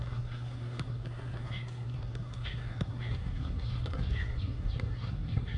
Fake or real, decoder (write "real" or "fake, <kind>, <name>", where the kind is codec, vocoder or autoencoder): fake, codec, SNAC